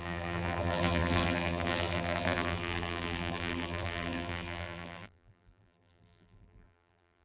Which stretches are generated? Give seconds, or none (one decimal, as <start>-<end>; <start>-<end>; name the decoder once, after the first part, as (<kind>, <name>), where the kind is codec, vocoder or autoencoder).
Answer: 0.0-7.2 (vocoder, BigVGAN v2)